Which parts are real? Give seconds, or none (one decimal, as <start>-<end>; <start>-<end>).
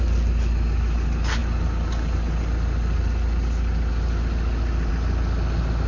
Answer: 0.0-5.9